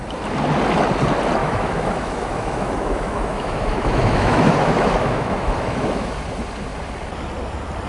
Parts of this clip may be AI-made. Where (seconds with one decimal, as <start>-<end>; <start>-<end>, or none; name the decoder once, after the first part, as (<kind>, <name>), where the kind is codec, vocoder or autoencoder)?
1.4-6.1 (autoencoder, DAC-VAE)